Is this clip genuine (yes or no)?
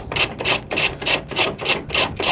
no